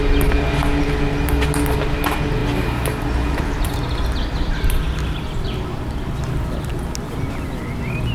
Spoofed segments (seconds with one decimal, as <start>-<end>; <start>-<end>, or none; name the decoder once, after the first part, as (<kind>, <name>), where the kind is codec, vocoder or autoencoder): none